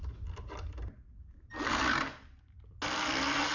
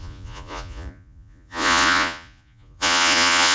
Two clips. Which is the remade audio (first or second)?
second